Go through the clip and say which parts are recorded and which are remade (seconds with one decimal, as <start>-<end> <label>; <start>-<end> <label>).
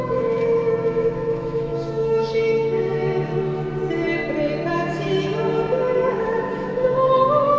0.0-3.3 remade; 3.3-4.7 recorded; 4.7-5.3 remade; 5.3-6.1 recorded; 6.1-7.6 remade